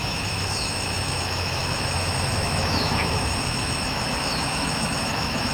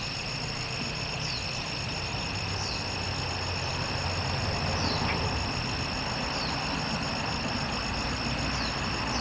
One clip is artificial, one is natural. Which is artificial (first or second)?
first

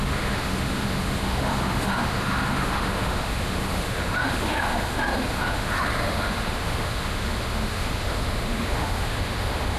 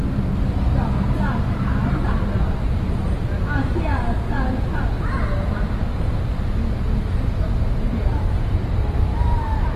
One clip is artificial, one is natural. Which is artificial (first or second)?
first